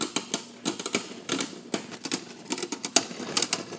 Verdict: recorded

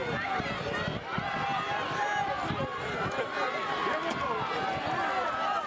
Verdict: recorded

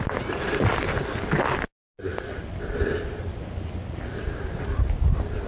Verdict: recorded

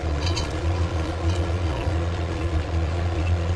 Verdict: remade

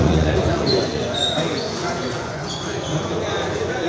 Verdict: remade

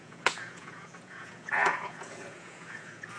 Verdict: remade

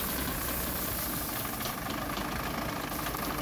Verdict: recorded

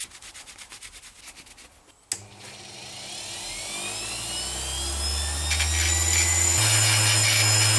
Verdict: recorded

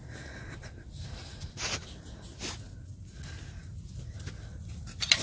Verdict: recorded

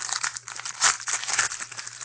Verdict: recorded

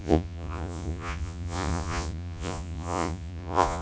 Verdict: remade